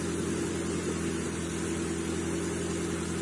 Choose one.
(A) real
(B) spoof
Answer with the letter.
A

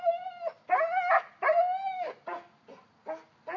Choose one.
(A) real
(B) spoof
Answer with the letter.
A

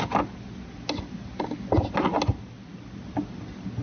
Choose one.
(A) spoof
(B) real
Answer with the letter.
B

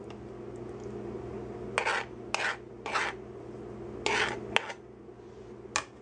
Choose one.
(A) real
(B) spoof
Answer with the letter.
A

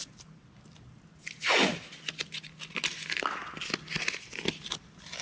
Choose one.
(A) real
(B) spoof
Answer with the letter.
A